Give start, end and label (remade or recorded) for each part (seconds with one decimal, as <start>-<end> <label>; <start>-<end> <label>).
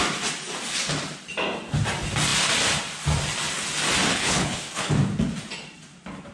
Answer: 0.0-4.1 recorded; 4.1-4.9 remade; 4.9-6.3 recorded